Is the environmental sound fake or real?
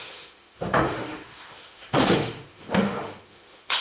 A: fake